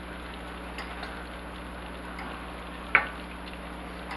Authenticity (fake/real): real